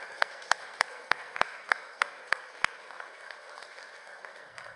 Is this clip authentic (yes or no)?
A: no